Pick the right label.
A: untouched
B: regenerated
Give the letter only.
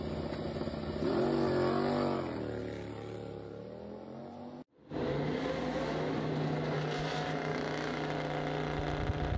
A